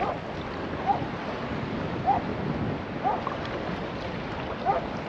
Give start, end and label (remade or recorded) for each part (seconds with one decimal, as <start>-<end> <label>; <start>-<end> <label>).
0.0-5.1 recorded